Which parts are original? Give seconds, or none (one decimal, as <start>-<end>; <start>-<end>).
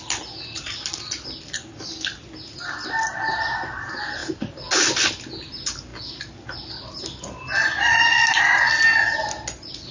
0.0-9.9